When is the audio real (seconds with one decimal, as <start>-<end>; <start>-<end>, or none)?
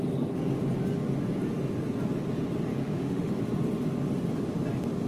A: 0.0-2.8; 3.3-5.1